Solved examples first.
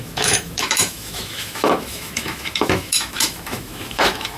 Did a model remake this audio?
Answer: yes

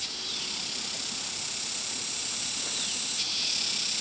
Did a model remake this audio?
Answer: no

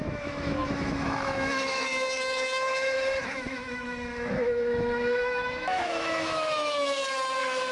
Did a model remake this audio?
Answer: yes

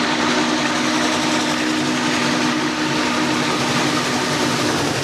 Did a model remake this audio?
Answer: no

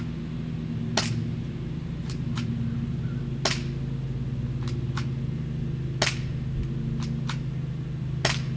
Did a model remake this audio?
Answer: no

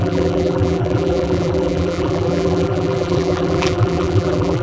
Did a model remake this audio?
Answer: yes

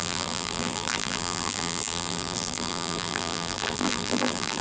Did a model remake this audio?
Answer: yes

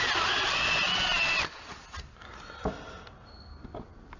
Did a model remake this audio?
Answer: no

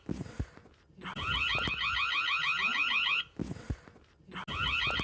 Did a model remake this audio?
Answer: no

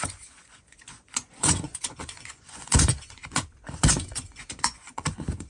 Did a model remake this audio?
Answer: yes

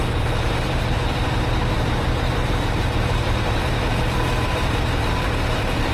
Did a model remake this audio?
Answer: yes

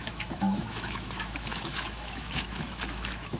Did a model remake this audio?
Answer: yes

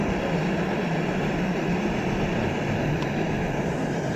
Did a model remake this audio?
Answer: yes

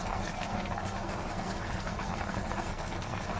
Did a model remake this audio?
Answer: yes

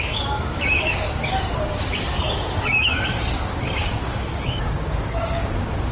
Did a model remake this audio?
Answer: yes